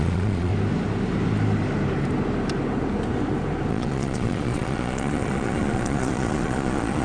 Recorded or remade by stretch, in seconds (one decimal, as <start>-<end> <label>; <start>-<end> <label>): 0.0-0.5 remade; 0.5-3.7 recorded; 3.7-7.0 remade